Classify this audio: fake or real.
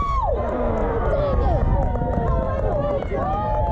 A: real